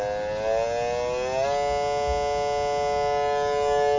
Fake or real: real